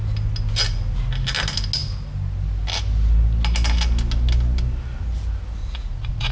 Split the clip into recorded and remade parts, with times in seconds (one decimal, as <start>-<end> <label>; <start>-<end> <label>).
0.0-5.6 recorded; 5.6-6.3 remade